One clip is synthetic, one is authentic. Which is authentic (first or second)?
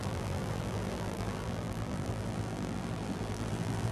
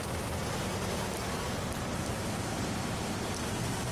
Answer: second